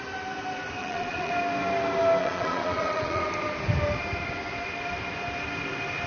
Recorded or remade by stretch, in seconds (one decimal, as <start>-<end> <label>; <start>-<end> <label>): 0.0-0.8 recorded; 0.8-1.3 remade; 1.3-2.2 recorded; 2.2-3.2 remade; 3.2-6.1 recorded